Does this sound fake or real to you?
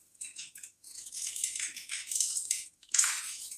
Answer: fake